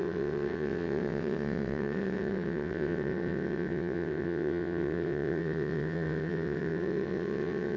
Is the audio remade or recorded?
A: remade